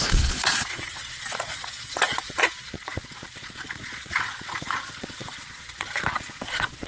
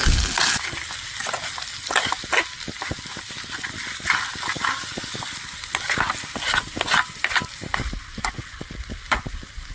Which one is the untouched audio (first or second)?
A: second